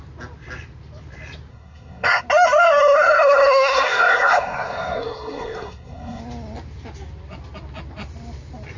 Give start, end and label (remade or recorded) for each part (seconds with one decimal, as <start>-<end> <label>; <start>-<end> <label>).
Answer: 0.0-1.5 recorded; 1.5-2.2 remade; 2.2-2.8 recorded; 2.8-6.2 remade; 6.2-8.8 recorded